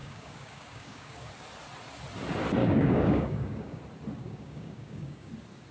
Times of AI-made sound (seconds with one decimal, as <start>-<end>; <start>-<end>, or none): 0.0-1.3; 2.6-3.8; 4.2-5.3